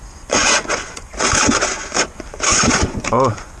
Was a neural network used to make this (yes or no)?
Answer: yes